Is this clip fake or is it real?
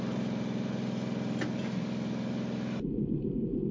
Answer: real